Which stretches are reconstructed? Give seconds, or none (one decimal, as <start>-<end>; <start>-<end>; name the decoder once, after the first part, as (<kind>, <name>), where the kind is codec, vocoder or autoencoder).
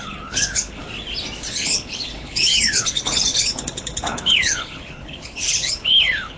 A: 0.0-0.8 (codec, HILCodec); 1.5-6.4